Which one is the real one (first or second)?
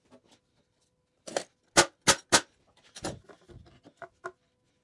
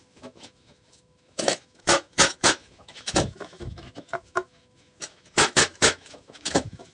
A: first